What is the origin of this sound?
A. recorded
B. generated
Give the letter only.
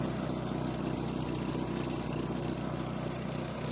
A